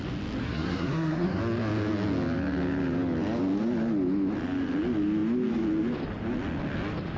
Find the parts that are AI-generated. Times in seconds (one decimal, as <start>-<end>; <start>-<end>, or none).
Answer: 0.4-1.4